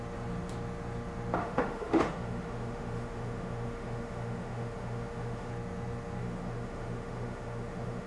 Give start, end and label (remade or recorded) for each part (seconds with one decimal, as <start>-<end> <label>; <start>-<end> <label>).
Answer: 0.0-1.4 recorded; 1.4-5.5 remade; 5.5-6.2 recorded; 6.2-8.1 remade